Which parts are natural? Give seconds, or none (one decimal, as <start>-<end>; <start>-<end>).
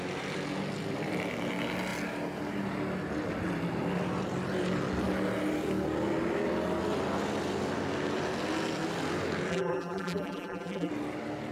0.0-9.5; 10.9-11.5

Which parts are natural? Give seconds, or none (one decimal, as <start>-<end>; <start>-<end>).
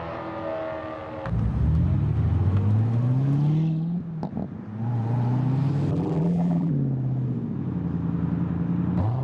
0.0-5.9; 6.7-9.2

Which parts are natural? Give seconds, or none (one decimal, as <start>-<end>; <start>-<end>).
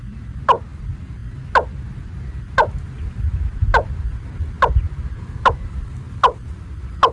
0.0-7.1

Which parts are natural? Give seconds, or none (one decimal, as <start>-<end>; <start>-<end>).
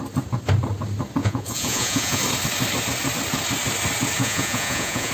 0.0-1.2; 2.2-4.2